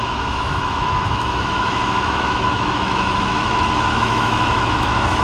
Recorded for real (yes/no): no